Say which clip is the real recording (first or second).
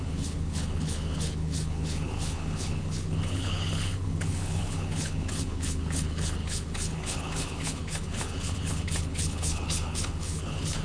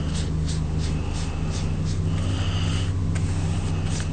second